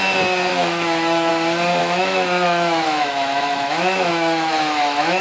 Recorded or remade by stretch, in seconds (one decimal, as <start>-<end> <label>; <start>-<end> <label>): 0.0-0.5 recorded; 0.5-1.3 remade; 1.3-1.8 recorded; 1.8-5.2 remade

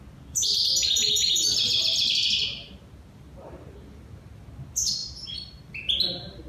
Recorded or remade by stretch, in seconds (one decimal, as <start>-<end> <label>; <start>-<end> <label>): 0.0-6.5 recorded

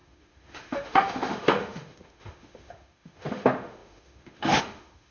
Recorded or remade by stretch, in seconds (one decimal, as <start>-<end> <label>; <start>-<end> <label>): 0.0-5.1 remade

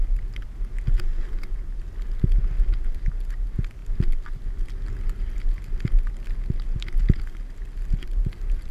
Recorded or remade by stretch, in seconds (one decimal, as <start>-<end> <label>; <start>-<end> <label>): 0.0-8.7 recorded

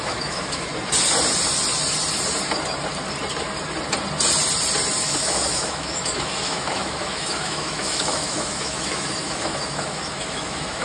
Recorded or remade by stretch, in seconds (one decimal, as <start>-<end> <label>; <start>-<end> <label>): 0.0-0.7 remade; 0.7-5.0 recorded; 5.0-10.8 remade

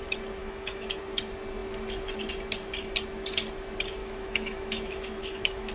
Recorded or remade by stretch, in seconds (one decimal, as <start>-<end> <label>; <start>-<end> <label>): 0.0-0.4 recorded; 0.4-1.0 remade; 1.0-4.0 recorded; 4.0-5.7 remade

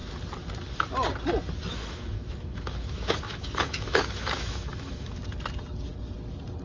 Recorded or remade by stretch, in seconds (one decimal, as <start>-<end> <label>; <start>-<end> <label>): 0.0-1.7 recorded; 1.7-5.2 remade; 5.2-6.6 recorded